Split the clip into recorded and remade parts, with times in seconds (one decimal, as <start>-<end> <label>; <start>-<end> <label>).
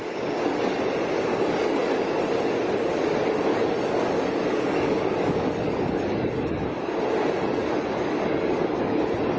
0.0-1.3 recorded; 1.3-2.2 remade; 2.2-3.5 recorded; 3.5-7.0 remade; 7.0-7.6 recorded; 7.6-9.0 remade; 9.0-9.4 recorded